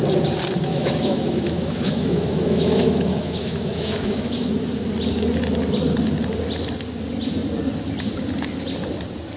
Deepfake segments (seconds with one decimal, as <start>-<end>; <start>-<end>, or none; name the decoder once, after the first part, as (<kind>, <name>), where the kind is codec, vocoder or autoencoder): 0.7-4.5 (autoencoder, DAC-VAE)